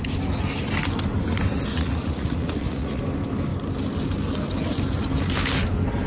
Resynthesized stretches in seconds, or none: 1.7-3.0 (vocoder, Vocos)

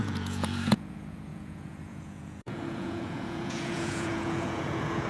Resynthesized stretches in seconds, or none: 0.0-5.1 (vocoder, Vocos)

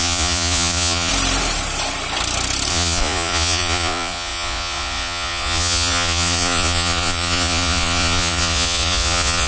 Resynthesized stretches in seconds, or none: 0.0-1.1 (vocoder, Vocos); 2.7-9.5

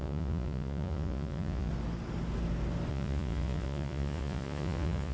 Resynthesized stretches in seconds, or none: 0.0-1.7 (vocoder, Vocos); 2.9-5.1

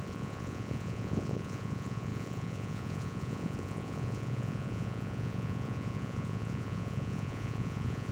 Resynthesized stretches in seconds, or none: 0.0-8.1 (vocoder, Vocos)

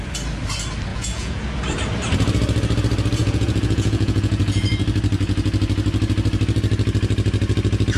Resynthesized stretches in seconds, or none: 0.9-1.4 (vocoder, Vocos); 3.2-4.8